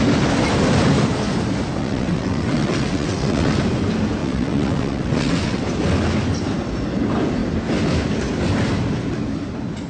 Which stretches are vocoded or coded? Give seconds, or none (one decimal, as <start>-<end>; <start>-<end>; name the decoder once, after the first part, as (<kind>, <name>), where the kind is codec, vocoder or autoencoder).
1.8-3.6 (vocoder, WaveNeXt); 4.2-5.6